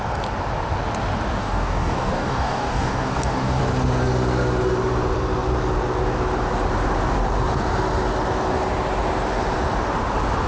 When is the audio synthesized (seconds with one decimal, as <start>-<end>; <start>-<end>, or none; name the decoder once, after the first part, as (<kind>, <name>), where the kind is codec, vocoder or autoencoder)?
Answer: 1.4-3.6 (codec, DAC)